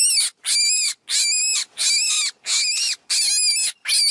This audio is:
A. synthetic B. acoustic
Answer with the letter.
B